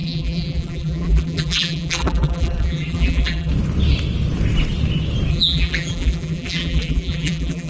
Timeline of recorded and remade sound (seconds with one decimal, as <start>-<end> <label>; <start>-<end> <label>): 0.0-3.5 remade; 3.5-5.3 recorded; 5.3-7.7 remade